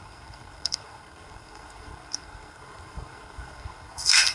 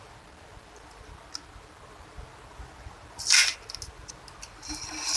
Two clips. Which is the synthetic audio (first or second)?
first